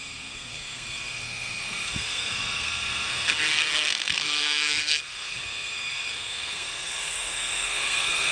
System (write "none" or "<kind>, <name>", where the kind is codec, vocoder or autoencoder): codec, SNAC